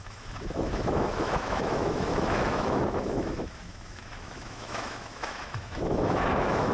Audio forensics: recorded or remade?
remade